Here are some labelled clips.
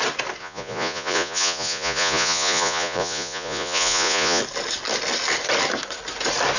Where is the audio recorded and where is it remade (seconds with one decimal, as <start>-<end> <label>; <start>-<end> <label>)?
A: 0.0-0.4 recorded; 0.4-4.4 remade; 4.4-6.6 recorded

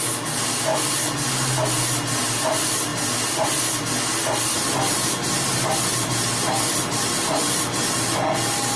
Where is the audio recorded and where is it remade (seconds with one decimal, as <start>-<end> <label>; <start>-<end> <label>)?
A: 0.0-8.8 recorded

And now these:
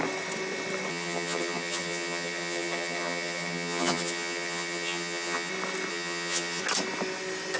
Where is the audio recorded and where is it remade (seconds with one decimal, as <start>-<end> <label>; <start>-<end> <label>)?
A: 0.0-0.9 recorded; 0.9-5.5 remade; 5.5-5.9 recorded; 5.9-6.6 remade; 6.6-7.6 recorded

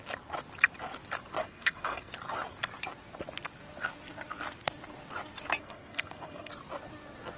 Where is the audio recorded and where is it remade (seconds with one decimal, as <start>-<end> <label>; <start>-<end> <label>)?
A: 0.0-1.4 recorded; 1.4-2.1 remade; 2.1-5.6 recorded; 5.6-6.5 remade; 6.5-7.4 recorded

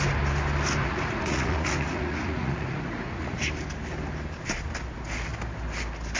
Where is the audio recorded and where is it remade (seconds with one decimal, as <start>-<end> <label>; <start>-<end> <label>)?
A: 0.0-0.8 recorded; 0.8-3.4 remade; 3.4-6.2 recorded

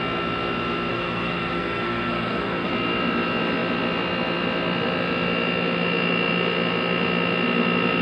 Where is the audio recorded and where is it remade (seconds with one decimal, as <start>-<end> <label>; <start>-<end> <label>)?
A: 0.0-0.9 recorded; 0.9-2.7 remade; 2.7-8.0 recorded

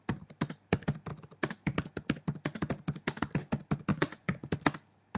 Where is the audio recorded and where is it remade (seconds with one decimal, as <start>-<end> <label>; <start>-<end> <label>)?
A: 0.0-3.9 recorded; 3.9-4.5 remade; 4.5-5.2 recorded